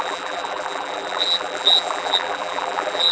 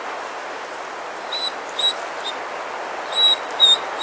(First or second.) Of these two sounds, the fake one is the first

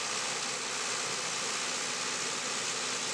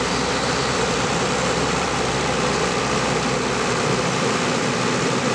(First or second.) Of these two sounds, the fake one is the second